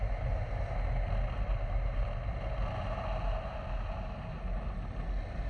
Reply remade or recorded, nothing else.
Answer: recorded